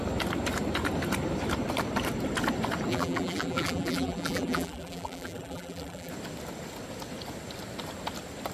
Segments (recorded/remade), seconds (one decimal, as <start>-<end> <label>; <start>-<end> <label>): 0.0-2.9 recorded; 2.9-6.1 remade; 6.1-8.5 recorded